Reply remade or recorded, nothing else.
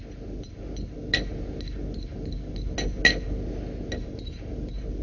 recorded